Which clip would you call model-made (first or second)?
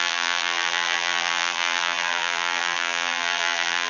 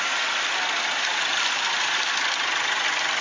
first